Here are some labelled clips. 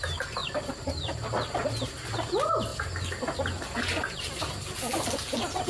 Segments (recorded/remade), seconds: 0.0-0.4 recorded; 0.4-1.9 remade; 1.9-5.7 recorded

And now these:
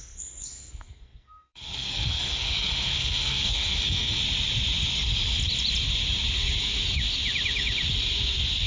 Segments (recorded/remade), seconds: 0.0-4.2 remade; 4.2-8.7 recorded

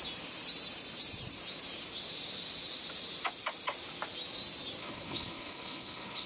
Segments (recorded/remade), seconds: 0.0-4.8 recorded; 4.8-6.3 remade

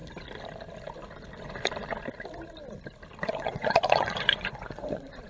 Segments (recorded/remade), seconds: 0.0-3.2 recorded; 3.2-5.3 remade

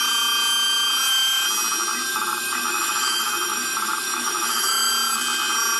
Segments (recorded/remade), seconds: 0.0-2.1 recorded; 2.1-4.9 remade; 4.9-5.8 recorded